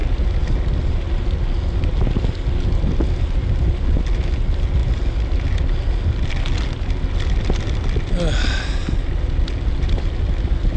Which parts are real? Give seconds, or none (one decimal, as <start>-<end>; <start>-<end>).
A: 0.0-10.8